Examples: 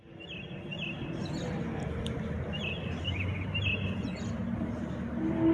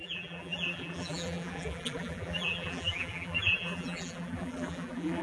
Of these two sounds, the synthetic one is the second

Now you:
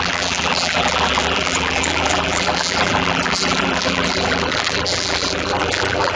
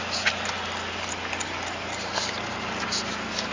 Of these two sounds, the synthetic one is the first